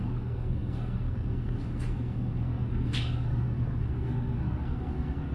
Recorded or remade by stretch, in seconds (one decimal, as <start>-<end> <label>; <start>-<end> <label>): 0.0-5.3 remade